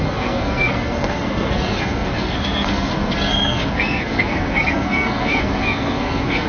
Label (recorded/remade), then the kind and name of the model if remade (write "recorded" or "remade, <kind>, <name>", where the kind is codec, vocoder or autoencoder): remade, codec, SNAC